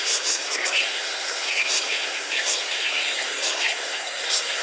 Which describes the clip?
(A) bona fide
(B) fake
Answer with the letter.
B